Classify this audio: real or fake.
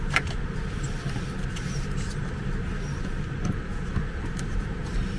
fake